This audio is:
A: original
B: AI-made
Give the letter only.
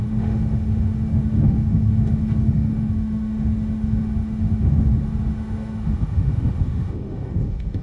B